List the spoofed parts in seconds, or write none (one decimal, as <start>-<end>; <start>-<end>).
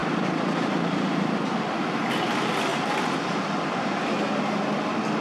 2.7-3.3